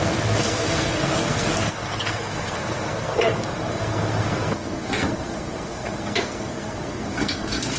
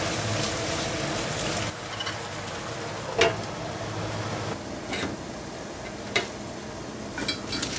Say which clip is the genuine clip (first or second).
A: second